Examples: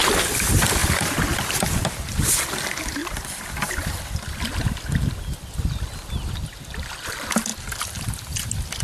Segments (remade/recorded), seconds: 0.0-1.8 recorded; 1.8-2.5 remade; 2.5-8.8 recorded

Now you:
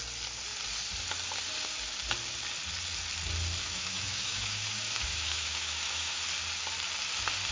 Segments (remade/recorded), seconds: 0.0-3.6 recorded; 3.6-6.2 remade; 6.2-7.5 recorded